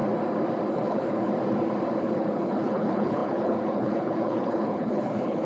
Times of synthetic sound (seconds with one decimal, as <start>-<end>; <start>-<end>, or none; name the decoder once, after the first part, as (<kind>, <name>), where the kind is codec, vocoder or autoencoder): 0.7-1.3 (codec, HILCodec); 2.0-5.5